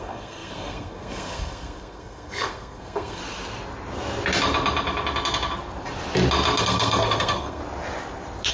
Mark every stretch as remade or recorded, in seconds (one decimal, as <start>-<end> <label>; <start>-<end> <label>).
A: 0.0-3.2 remade; 3.2-6.6 recorded; 6.6-7.6 remade; 7.6-8.5 recorded

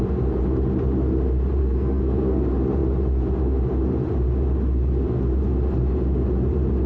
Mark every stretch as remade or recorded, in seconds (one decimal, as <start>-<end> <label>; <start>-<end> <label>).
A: 0.0-1.6 recorded; 1.6-2.4 remade; 2.4-6.9 recorded